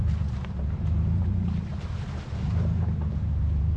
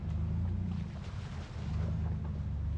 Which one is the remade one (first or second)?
first